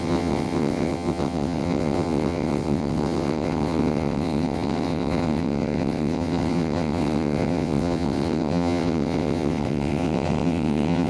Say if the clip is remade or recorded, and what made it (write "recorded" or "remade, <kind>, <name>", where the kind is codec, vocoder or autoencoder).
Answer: remade, vocoder, WaveNeXt